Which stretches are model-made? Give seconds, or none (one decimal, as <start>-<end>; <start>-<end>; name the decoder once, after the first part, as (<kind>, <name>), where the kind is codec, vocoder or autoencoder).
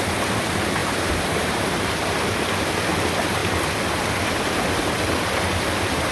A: 0.8-1.9 (vocoder, BigVGAN v2)